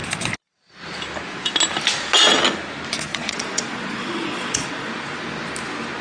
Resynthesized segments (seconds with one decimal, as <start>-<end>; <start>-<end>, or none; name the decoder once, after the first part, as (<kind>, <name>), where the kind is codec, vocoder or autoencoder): 3.1-4.9 (vocoder, Vocos)